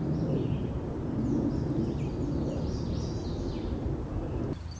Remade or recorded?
recorded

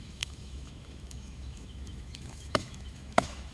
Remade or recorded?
remade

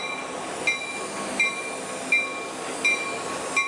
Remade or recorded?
recorded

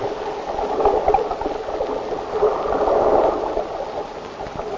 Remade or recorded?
recorded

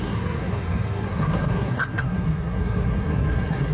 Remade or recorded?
remade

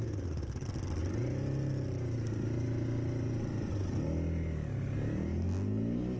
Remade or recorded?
recorded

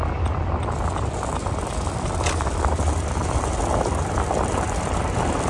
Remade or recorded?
remade